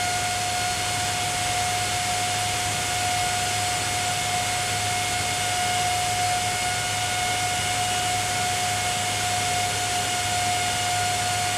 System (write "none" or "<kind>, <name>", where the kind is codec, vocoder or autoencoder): none